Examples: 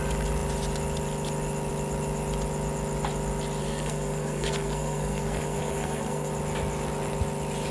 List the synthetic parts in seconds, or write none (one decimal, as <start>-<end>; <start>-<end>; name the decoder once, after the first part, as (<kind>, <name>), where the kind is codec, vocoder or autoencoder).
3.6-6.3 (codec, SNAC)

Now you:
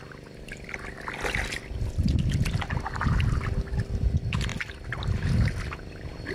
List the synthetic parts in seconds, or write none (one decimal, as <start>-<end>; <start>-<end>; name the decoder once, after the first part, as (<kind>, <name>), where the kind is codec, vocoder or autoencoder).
none

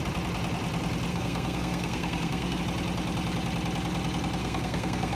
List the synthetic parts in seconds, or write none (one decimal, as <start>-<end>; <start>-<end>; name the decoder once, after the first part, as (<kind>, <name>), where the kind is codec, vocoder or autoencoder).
1.1-2.6 (codec, SNAC); 4.4-5.2

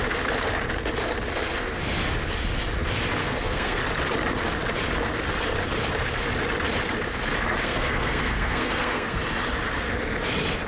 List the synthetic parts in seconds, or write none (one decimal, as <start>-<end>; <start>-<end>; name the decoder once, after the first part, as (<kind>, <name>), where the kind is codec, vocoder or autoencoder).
3.2-3.8 (codec, SNAC); 7.6-9.2